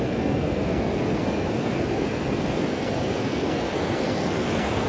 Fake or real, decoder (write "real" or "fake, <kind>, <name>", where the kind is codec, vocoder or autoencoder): fake, codec, SNAC